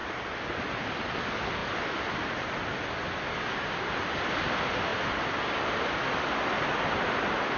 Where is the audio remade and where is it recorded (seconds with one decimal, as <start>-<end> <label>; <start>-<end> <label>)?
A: 0.0-3.3 recorded; 3.3-3.9 remade; 3.9-7.6 recorded

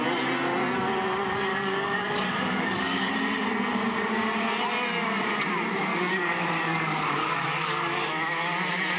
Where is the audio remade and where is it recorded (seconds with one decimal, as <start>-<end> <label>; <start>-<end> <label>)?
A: 0.0-1.5 recorded; 1.5-3.1 remade; 3.1-5.9 recorded; 5.9-8.3 remade; 8.3-9.0 recorded